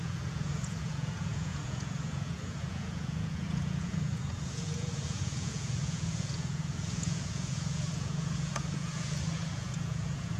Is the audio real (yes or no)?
no